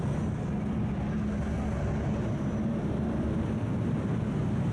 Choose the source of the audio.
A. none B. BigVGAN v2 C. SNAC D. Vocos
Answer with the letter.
A